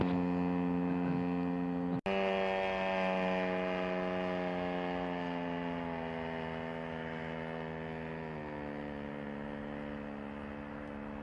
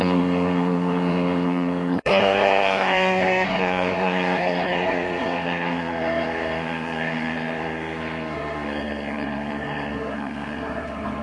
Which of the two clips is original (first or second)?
first